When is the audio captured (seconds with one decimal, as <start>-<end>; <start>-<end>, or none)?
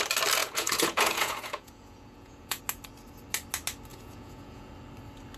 0.0-0.4; 2.6-3.9; 4.7-5.4